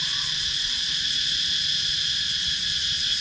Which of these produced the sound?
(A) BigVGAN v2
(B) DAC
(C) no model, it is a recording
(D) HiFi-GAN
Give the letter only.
A